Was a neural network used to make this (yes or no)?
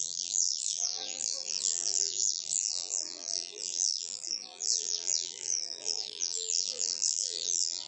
yes